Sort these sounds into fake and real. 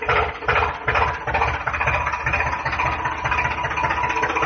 real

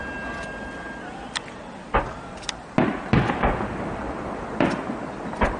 real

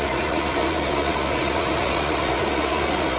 fake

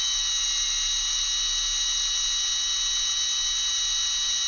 real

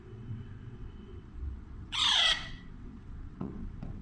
fake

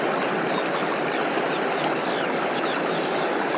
real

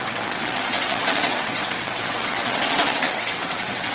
fake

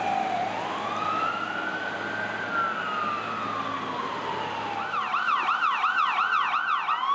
real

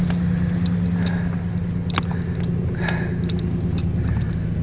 real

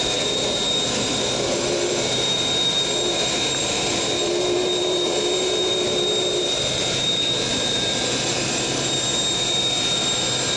fake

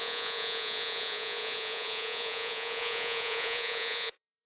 fake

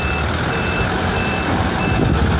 real